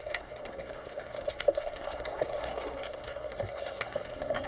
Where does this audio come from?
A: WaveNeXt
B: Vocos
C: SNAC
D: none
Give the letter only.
C